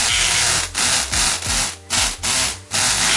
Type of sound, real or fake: real